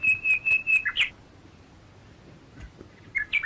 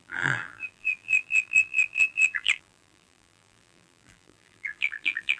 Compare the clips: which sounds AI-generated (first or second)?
second